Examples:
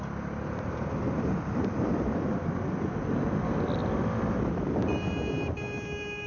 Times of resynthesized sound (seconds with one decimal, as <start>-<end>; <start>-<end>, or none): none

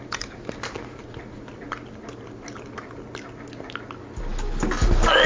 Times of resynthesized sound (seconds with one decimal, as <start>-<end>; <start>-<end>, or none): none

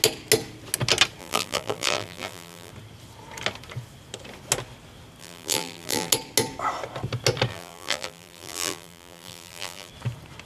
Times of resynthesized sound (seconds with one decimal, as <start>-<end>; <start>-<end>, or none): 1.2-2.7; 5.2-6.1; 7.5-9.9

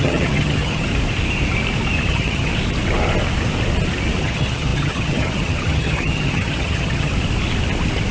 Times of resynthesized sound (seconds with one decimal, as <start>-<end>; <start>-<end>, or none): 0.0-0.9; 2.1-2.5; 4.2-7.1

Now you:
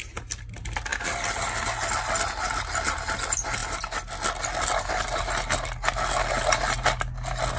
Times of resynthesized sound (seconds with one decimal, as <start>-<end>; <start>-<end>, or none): none

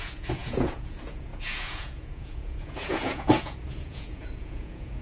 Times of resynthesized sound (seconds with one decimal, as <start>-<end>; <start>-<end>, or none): 0.0-5.0

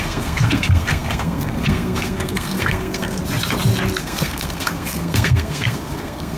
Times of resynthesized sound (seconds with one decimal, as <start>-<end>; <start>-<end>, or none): 0.0-3.2; 4.0-6.4

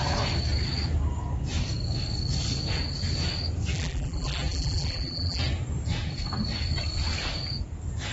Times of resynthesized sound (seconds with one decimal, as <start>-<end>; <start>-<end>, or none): 3.7-5.4